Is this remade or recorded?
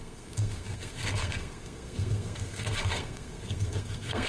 remade